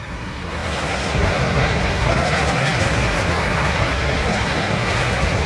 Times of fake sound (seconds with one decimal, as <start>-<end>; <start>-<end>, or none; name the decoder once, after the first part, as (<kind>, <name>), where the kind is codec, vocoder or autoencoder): 0.0-5.5 (codec, SNAC)